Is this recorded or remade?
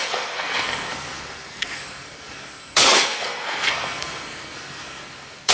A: remade